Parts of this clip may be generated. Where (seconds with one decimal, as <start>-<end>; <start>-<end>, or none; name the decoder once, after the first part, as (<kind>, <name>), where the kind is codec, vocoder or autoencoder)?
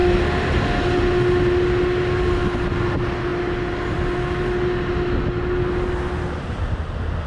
none